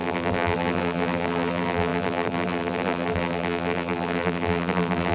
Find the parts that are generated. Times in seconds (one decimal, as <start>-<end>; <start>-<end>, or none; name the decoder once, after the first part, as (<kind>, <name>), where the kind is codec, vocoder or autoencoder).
0.0-5.1 (vocoder, BigVGAN v2)